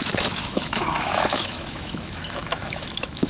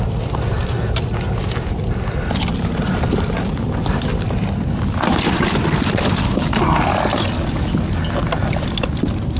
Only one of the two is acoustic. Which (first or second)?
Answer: second